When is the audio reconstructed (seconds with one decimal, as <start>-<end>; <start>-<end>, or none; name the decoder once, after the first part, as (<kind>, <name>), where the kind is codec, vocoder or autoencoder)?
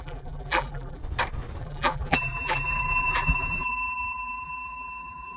0.0-1.0 (vocoder, BigVGAN v2); 1.6-5.4